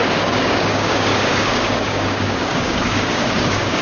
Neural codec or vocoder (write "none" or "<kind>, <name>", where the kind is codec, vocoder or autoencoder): codec, DAC